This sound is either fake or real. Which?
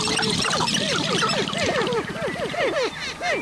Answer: fake